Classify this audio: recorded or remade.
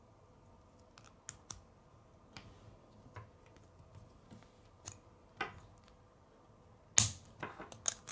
recorded